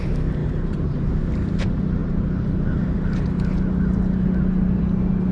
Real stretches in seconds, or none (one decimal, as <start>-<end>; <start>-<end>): 0.0-0.4; 1.6-5.3